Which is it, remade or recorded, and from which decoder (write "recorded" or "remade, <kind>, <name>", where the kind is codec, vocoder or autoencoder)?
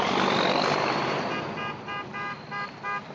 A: recorded